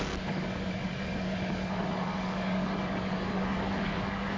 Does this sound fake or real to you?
fake